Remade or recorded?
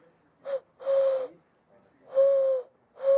recorded